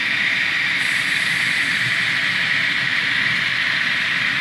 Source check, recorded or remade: remade